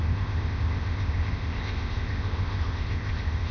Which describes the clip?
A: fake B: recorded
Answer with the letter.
A